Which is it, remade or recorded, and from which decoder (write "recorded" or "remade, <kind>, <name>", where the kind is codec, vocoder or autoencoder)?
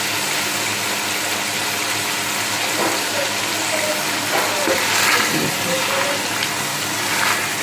recorded